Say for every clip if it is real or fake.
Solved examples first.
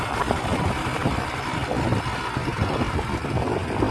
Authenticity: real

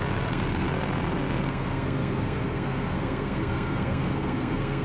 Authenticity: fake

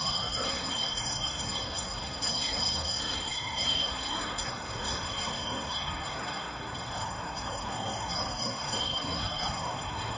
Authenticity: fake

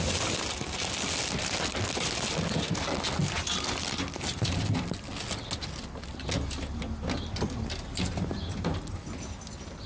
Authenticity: real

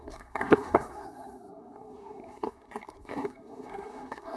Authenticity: fake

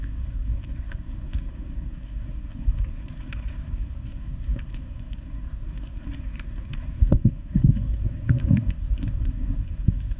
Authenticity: fake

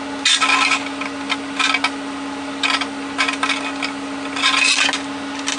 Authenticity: real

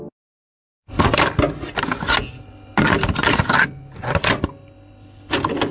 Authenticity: real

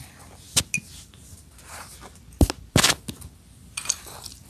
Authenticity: real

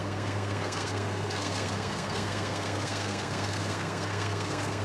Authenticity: fake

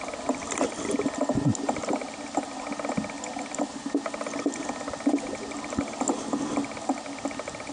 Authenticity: real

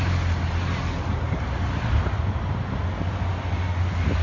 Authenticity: real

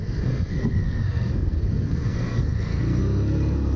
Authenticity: fake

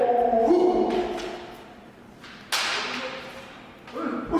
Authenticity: real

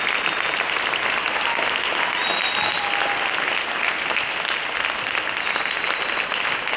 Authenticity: real